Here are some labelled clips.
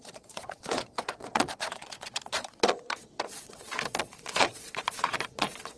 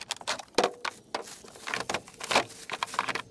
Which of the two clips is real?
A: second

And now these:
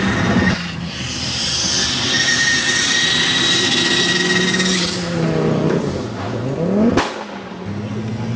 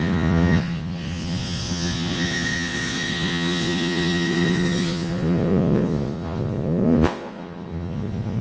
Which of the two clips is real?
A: first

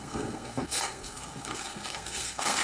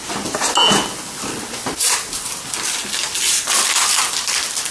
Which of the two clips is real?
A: second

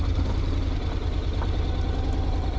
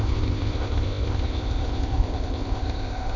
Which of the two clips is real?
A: first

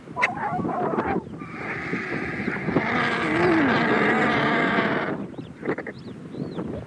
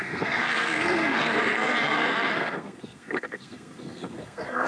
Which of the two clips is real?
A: first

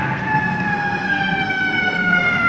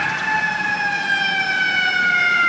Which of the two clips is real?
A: second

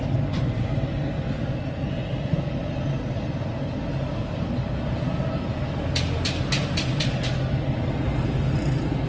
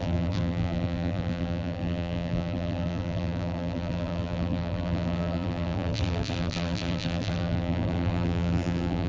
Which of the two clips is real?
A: first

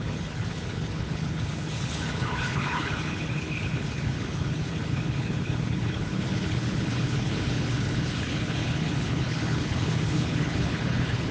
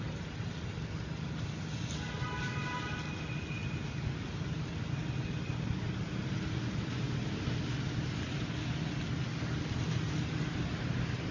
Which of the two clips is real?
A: second